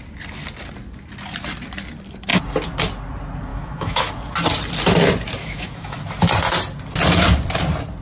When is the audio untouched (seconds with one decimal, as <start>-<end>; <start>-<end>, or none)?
0.0-3.5; 4.1-5.4; 6.0-8.0